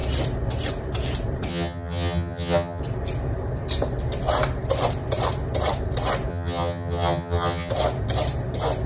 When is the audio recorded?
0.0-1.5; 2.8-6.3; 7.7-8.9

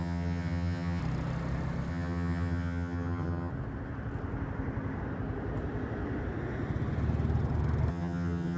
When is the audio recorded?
1.0-1.9; 3.5-7.9

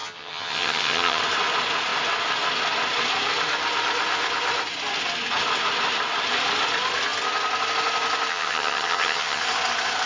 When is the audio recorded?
1.2-8.3; 9.4-10.1

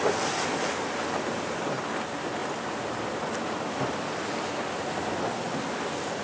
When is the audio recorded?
0.0-6.2

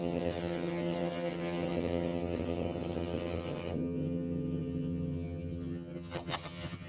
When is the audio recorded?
none